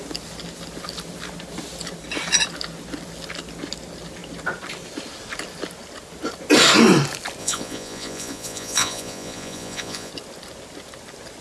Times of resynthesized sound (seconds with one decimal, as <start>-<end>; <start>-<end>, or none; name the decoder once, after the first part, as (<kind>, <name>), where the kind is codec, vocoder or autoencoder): 7.4-10.1 (vocoder, Vocos)